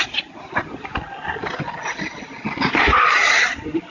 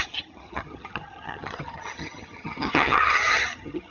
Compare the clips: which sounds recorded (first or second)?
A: first